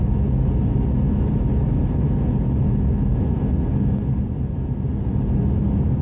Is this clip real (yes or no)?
yes